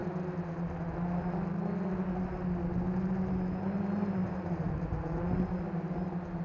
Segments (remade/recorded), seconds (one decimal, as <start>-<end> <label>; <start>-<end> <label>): 0.0-4.2 recorded; 4.2-5.1 remade; 5.1-6.4 recorded